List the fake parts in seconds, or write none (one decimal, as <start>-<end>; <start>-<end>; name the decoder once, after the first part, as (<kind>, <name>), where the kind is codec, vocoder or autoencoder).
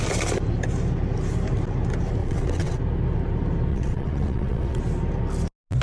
2.2-2.8 (vocoder, WaveNeXt); 3.7-4.8